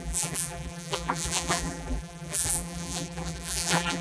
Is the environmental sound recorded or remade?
remade